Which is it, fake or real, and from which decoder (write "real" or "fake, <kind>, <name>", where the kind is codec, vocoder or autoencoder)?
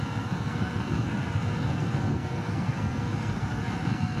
fake, codec, SNAC